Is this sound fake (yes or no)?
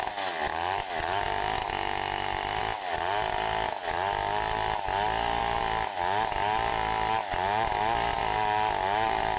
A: no